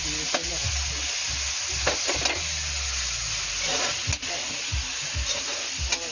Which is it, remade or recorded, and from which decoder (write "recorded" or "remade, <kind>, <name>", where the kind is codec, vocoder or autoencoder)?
recorded